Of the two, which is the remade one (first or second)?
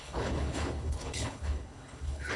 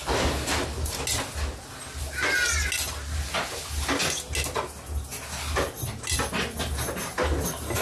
first